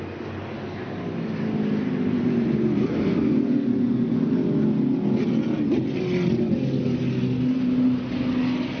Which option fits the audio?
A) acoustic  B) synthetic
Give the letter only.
A